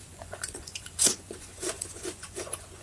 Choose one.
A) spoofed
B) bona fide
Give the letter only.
A